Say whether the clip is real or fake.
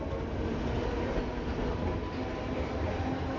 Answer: real